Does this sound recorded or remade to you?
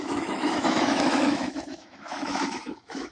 remade